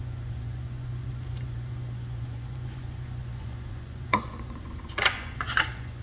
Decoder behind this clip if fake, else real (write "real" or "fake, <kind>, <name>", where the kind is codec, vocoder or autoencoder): fake, vocoder, Vocos